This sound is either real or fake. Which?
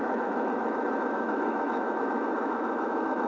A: fake